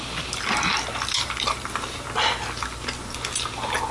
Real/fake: real